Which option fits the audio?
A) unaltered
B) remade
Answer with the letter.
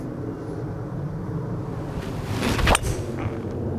A